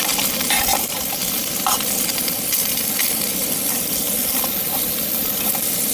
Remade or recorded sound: recorded